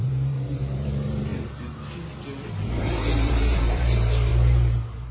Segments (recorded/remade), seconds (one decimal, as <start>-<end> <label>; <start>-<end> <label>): 0.0-1.3 remade; 1.3-2.8 recorded; 2.8-4.3 remade; 4.3-5.1 recorded